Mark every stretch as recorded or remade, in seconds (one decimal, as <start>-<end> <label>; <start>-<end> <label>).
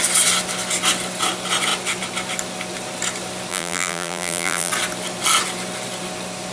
0.0-3.5 recorded; 3.5-4.7 remade; 4.7-6.5 recorded